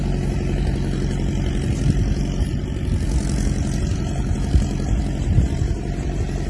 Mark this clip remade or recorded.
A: recorded